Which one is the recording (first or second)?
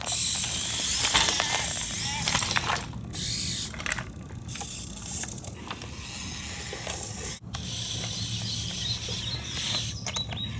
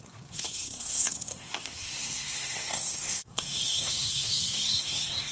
first